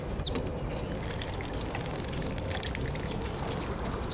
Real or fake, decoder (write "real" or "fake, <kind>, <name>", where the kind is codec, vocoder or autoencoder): real